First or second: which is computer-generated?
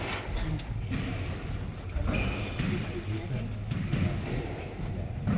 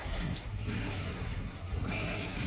second